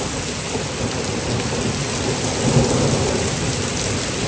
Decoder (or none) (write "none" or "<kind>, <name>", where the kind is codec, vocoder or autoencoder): none